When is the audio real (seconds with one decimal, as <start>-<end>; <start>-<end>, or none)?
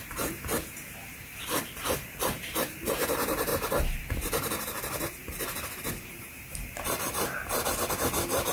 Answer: 3.5-6.1; 7.7-8.5